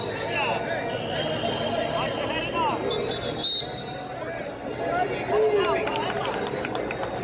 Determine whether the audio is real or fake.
real